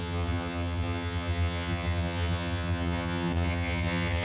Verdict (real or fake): fake